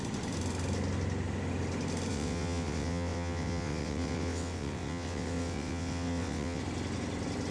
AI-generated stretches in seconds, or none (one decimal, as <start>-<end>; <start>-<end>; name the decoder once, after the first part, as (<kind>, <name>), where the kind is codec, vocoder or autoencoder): 2.1-6.6 (vocoder, WaveNeXt)